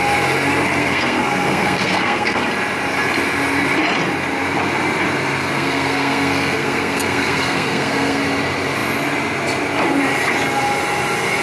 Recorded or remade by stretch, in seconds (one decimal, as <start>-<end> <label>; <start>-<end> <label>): 0.0-0.8 recorded; 0.8-2.5 remade; 2.5-5.4 recorded; 5.4-8.2 remade; 8.2-11.4 recorded